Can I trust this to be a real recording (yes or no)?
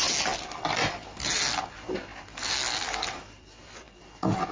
yes